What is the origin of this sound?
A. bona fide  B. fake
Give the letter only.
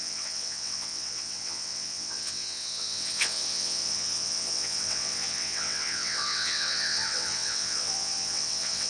B